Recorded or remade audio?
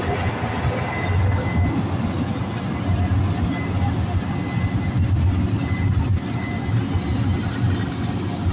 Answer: recorded